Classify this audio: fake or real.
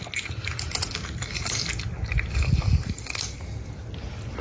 real